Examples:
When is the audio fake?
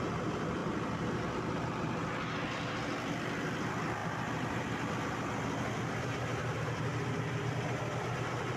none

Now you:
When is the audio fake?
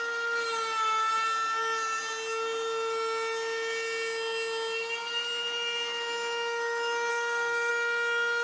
7.1-7.7